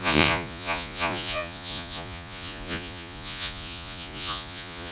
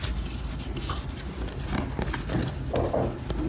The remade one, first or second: first